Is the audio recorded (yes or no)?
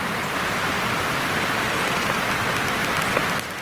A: yes